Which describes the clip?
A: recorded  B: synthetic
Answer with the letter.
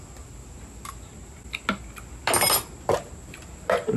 A